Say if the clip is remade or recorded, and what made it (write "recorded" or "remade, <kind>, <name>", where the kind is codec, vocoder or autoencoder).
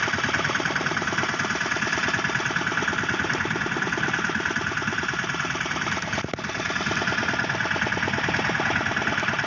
recorded